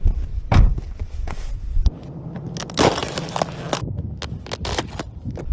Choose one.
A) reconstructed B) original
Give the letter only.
B